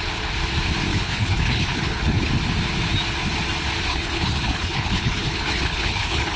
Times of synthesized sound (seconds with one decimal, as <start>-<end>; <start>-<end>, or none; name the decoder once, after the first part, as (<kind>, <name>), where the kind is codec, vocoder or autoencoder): 0.9-2.3 (codec, HILCodec); 3.9-6.4